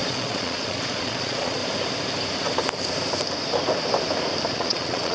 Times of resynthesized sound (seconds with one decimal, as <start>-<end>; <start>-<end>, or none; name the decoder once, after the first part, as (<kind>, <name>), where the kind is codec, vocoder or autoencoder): 0.0-1.6 (vocoder, Vocos); 4.5-5.1